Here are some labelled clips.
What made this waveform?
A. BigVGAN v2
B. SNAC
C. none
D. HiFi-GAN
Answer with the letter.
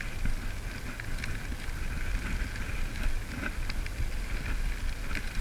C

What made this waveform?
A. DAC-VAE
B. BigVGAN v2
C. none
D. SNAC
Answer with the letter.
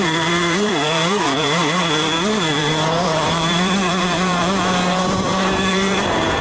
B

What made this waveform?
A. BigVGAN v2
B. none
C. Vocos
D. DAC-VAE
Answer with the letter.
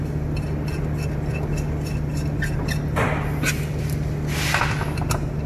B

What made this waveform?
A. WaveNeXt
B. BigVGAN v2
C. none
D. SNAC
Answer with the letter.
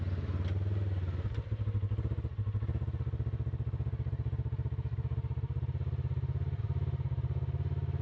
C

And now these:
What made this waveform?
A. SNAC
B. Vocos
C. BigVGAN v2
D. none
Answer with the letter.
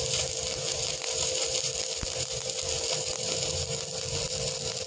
C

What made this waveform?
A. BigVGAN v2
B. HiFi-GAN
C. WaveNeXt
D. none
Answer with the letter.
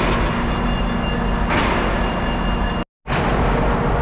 D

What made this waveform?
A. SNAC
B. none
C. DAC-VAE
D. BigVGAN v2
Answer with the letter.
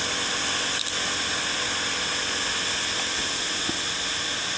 B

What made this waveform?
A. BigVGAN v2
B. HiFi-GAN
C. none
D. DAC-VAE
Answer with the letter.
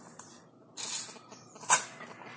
C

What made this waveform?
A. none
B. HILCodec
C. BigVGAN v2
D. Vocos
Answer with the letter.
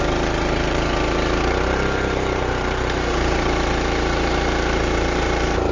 C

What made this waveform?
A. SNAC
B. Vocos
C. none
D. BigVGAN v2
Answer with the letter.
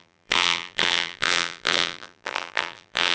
D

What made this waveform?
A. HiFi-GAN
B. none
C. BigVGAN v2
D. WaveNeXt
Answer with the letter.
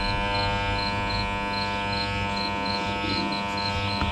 B